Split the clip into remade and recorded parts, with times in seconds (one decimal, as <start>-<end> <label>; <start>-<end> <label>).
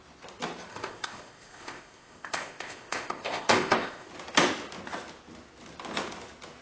0.0-0.7 recorded; 0.7-4.1 remade; 4.1-6.6 recorded